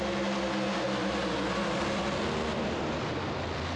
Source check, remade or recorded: recorded